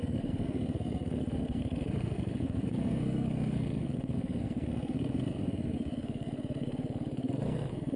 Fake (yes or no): yes